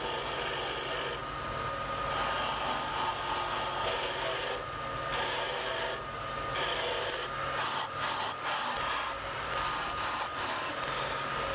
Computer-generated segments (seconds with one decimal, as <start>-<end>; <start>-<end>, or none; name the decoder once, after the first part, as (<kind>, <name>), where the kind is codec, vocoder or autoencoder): none